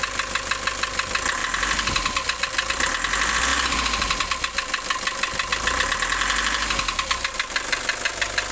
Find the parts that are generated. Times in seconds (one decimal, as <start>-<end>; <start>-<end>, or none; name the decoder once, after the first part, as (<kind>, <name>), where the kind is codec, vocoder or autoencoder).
none